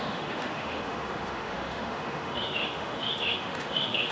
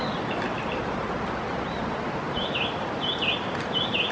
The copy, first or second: first